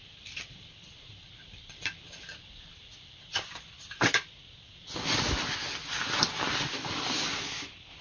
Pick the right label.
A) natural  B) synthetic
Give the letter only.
B